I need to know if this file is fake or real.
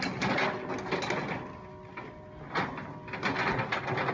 real